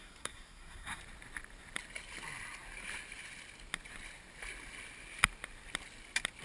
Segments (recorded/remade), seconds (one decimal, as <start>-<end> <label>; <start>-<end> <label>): 0.0-1.0 remade; 1.0-6.4 recorded